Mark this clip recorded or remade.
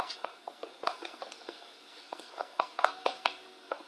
remade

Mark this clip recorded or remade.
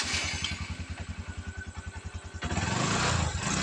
recorded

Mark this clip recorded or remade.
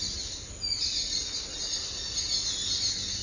recorded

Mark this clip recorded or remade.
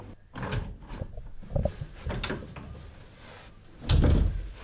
recorded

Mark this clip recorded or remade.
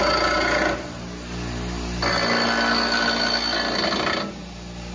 recorded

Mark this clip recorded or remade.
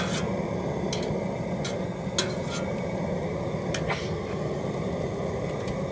recorded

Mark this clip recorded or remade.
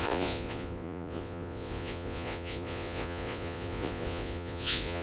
remade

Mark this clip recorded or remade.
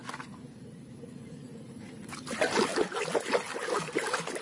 recorded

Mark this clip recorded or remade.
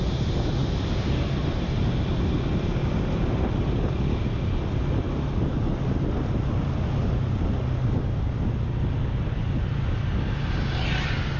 recorded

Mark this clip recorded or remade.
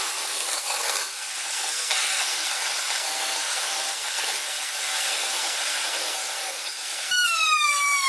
remade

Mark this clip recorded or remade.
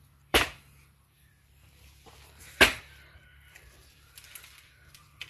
remade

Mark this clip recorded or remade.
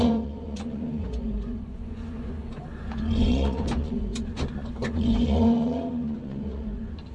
remade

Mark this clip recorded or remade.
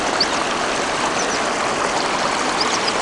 recorded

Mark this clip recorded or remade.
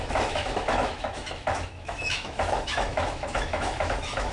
remade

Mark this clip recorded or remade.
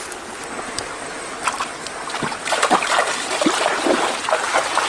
recorded